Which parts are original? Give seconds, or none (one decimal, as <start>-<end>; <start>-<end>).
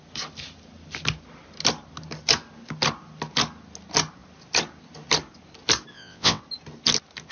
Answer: 0.0-5.9; 6.4-7.3